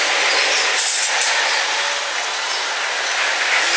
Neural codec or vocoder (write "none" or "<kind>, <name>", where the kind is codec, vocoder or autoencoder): none